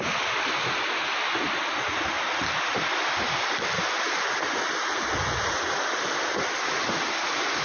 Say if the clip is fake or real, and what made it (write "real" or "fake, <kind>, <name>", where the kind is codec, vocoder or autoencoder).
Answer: real